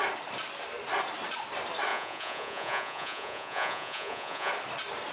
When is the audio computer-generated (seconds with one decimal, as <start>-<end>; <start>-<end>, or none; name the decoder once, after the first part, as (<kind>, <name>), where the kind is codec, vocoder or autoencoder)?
1.9-4.5 (vocoder, Vocos)